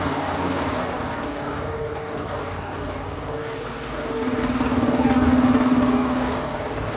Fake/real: fake